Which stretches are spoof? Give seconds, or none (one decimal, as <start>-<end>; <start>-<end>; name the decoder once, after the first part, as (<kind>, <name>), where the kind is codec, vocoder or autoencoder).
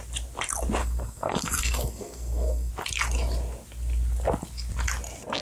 0.8-2.7 (codec, SNAC)